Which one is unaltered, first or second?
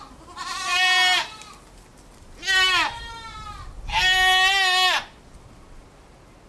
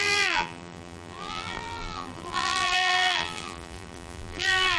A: first